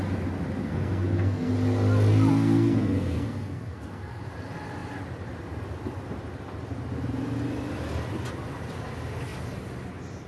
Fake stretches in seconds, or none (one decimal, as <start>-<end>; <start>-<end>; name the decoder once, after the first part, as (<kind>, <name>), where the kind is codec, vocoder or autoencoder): 0.6-1.5 (codec, SNAC); 2.3-4.2